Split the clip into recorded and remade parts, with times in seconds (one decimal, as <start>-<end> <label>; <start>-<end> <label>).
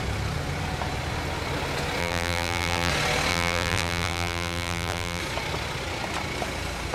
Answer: 0.0-2.0 recorded; 2.0-2.9 remade; 2.9-3.3 recorded; 3.3-5.2 remade; 5.2-6.9 recorded